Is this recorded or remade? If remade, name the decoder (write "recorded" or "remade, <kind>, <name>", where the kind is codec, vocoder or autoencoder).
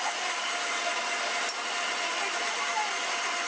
recorded